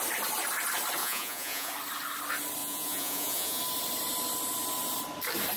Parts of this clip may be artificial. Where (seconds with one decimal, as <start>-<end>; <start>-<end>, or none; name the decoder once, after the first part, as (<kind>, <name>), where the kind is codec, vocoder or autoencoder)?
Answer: 1.0-1.7 (vocoder, Vocos); 2.6-3.6